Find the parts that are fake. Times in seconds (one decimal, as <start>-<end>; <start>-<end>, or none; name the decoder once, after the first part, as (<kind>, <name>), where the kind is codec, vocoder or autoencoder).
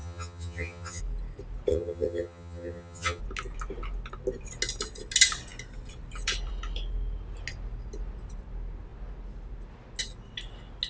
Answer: 0.0-1.0 (vocoder, HiFi-GAN); 1.7-3.2